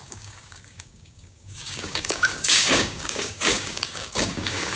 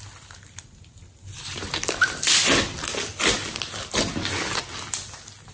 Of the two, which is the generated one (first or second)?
first